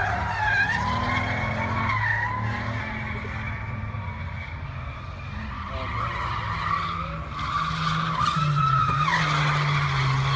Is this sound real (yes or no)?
yes